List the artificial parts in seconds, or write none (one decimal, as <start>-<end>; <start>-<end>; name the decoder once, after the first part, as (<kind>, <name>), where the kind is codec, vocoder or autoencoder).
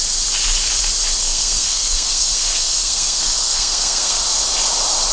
1.2-4.2 (codec, SNAC)